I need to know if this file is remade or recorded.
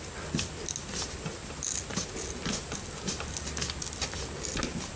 recorded